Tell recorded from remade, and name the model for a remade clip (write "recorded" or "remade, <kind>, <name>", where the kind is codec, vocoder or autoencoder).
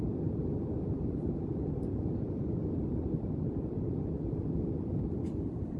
remade, vocoder, BigVGAN v2